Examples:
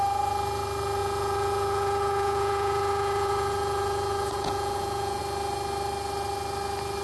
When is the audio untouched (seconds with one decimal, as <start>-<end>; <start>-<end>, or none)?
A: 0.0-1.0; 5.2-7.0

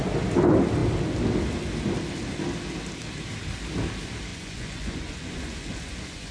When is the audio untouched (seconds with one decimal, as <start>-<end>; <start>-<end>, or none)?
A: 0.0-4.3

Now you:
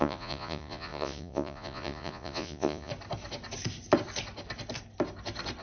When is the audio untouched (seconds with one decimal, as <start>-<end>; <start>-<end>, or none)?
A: 2.9-5.6